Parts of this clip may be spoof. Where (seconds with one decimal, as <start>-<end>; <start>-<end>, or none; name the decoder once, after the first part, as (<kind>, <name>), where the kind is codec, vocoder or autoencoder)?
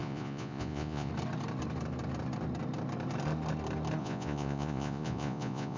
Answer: 0.0-1.1 (vocoder, Vocos); 4.0-5.8